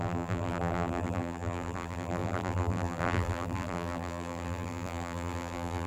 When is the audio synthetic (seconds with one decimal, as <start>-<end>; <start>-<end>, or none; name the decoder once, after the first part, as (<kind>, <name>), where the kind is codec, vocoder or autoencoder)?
0.0-5.9 (vocoder, BigVGAN v2)